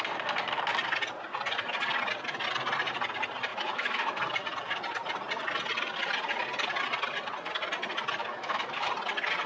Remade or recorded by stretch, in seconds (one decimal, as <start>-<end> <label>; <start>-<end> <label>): 0.0-3.5 recorded; 3.5-4.2 remade; 4.2-8.2 recorded; 8.2-8.9 remade; 8.9-9.5 recorded